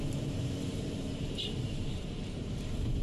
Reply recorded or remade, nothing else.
remade